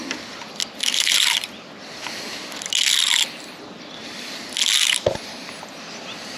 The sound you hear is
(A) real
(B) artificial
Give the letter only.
A